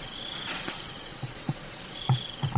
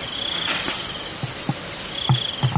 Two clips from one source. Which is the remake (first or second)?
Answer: first